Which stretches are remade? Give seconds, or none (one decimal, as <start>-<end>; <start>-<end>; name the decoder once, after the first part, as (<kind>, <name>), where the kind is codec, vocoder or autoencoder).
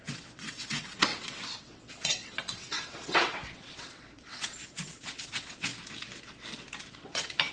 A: 0.0-5.7 (vocoder, WaveNeXt); 6.8-7.5